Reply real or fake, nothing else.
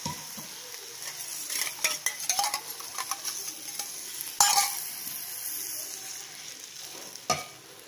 real